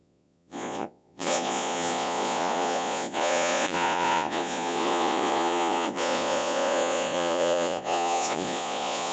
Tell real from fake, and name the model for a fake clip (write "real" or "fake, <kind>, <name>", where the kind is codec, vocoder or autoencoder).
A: fake, vocoder, Vocos